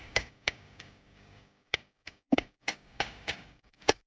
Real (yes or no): no